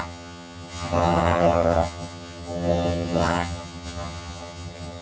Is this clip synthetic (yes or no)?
yes